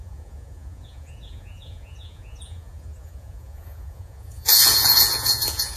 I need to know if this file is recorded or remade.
remade